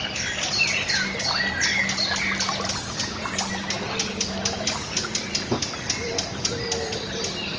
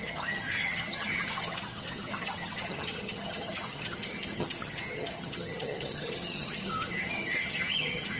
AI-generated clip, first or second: second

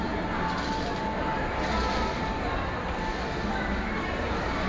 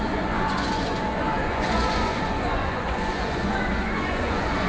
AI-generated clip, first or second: second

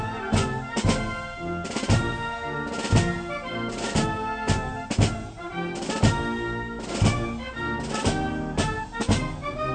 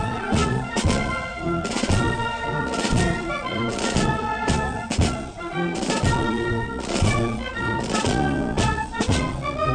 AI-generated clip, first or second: second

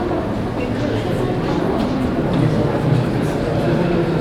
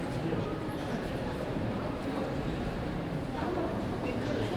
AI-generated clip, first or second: second